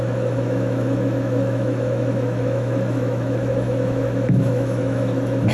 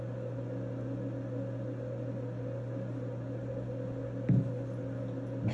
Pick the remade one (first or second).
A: first